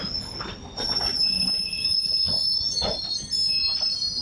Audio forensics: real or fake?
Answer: real